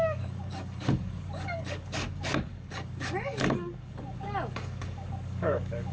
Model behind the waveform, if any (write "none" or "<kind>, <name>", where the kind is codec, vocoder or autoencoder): codec, DAC